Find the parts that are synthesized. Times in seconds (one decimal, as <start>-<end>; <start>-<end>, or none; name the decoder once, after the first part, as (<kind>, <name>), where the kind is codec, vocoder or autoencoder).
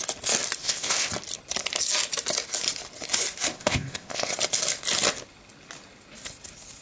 0.6-1.1 (codec, ZipCodec); 3.5-4.3